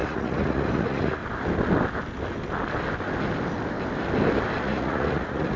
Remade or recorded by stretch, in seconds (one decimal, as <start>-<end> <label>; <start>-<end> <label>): 0.0-1.2 remade; 1.2-4.6 recorded; 4.6-5.6 remade